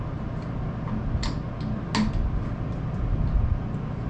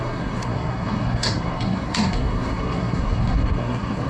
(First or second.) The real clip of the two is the first